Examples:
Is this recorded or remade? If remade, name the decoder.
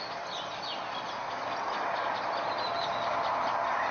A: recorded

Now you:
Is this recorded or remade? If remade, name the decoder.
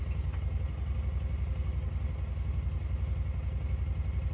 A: recorded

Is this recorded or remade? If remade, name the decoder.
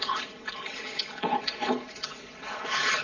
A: remade, codec, HILCodec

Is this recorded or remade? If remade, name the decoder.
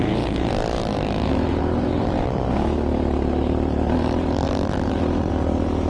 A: remade, vocoder, BigVGAN v2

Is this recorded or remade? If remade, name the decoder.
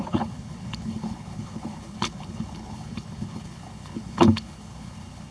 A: remade, codec, HILCodec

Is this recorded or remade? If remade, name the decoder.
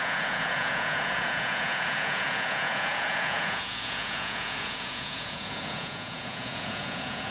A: remade, vocoder, Vocos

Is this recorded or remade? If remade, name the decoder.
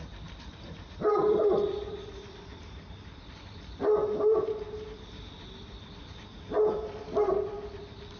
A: remade, vocoder, BigVGAN v2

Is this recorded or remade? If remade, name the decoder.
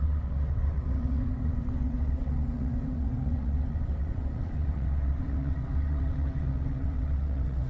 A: remade, vocoder, WaveNeXt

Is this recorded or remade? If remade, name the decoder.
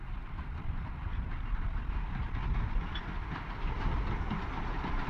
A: recorded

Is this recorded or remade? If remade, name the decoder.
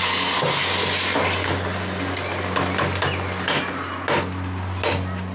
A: recorded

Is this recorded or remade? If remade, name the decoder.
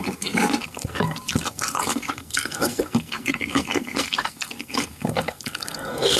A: remade, codec, SNAC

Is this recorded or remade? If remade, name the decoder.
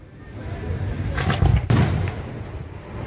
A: recorded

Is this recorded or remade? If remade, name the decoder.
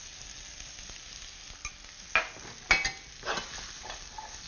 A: recorded